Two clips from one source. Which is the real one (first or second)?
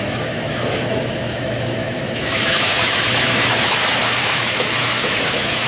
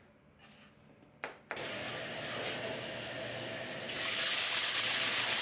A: second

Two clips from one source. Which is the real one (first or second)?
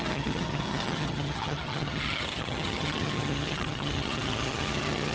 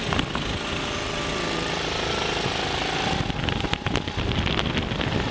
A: second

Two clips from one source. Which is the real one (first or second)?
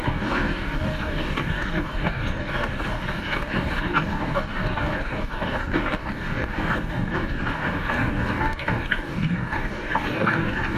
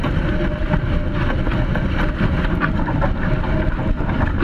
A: second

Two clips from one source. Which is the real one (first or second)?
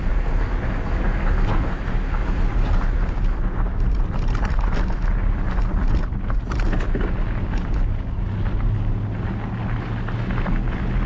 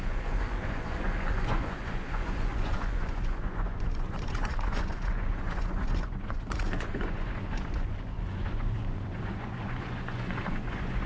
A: first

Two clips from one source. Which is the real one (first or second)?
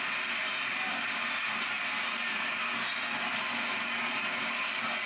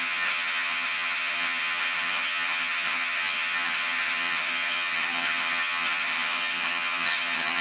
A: first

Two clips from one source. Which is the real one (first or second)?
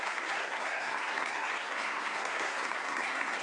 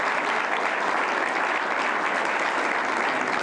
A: second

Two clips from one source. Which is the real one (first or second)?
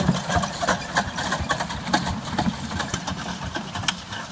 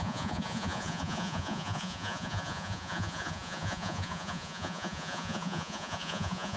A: first